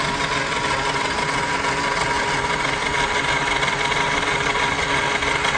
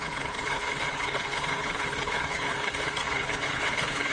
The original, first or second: first